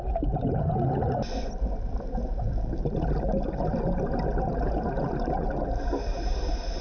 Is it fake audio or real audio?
real